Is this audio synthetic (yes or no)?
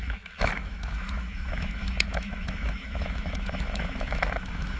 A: yes